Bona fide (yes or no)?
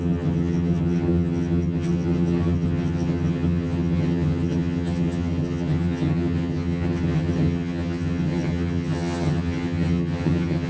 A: no